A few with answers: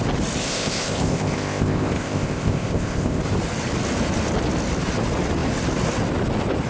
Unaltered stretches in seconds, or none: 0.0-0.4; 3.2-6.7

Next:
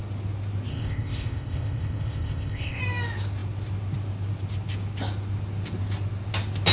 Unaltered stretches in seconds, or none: 0.0-0.7; 2.8-6.7

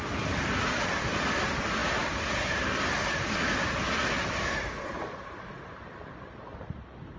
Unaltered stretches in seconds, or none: 0.0-7.2